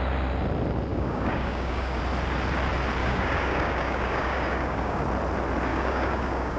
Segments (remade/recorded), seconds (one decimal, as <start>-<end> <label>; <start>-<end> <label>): 0.0-0.9 recorded; 0.9-2.0 remade; 2.0-3.0 recorded; 3.0-5.0 remade; 5.0-5.7 recorded; 5.7-6.6 remade